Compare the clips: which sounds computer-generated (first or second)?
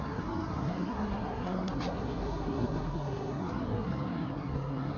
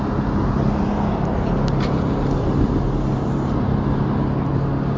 first